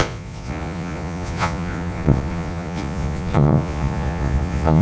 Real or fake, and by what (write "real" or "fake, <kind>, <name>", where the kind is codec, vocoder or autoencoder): fake, vocoder, Vocos